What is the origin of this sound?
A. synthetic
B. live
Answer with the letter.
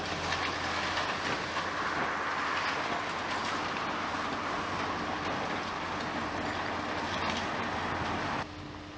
B